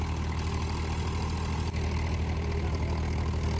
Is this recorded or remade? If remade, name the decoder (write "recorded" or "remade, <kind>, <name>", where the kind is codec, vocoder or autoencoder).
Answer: recorded